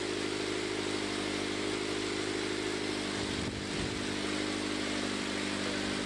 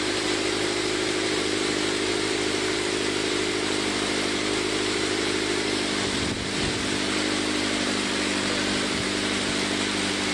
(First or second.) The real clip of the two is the first